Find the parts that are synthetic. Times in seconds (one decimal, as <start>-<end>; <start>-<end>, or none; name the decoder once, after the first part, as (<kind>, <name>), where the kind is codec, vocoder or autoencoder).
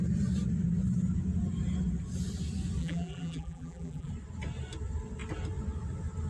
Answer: 2.8-4.1 (vocoder, BigVGAN v2)